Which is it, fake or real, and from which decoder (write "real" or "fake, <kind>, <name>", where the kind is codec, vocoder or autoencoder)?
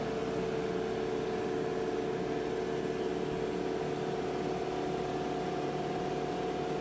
real